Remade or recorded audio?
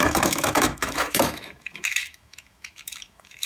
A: remade